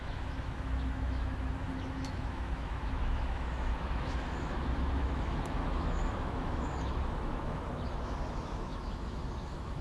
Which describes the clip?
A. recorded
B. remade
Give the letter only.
B